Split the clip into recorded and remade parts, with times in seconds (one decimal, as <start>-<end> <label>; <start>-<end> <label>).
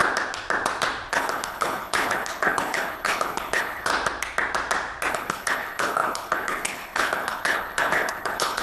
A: 0.0-1.1 recorded; 1.1-3.9 remade; 3.9-5.1 recorded; 5.1-8.6 remade